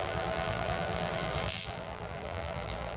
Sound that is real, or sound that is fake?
fake